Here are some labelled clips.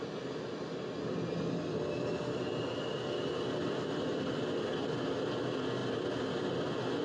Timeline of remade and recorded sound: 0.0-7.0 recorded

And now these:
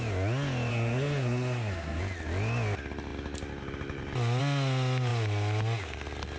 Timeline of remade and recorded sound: 0.0-0.7 recorded; 0.7-2.0 remade; 2.0-6.4 recorded

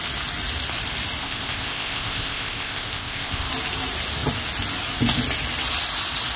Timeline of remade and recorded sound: 0.0-1.2 recorded; 1.2-3.5 remade; 3.5-6.4 recorded

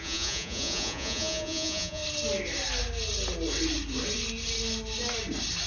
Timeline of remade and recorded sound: 0.0-2.0 remade; 2.0-5.7 recorded

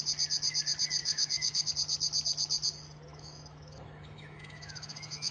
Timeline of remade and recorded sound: 0.0-1.0 recorded; 1.0-1.7 remade; 1.7-3.1 recorded; 3.1-5.3 remade